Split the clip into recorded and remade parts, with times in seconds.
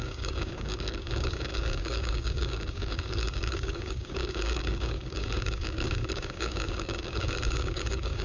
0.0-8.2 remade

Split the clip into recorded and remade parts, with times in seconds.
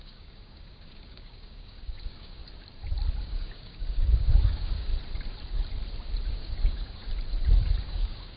0.0-2.4 remade; 2.4-3.2 recorded; 3.2-4.9 remade; 4.9-6.3 recorded; 6.3-7.1 remade; 7.1-7.8 recorded; 7.8-8.4 remade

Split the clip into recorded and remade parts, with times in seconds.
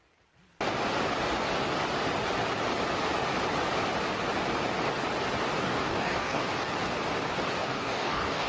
0.0-5.6 recorded; 5.6-6.4 remade; 6.4-7.6 recorded; 7.6-8.5 remade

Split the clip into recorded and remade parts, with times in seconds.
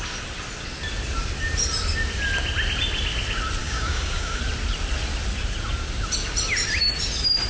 0.0-3.6 recorded; 3.6-4.4 remade; 4.4-7.5 recorded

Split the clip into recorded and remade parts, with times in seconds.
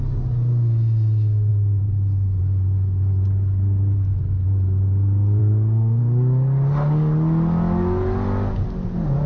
0.0-5.4 recorded; 5.4-6.0 remade; 6.0-9.3 recorded